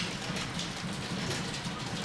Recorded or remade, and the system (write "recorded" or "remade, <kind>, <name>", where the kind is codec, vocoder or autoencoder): recorded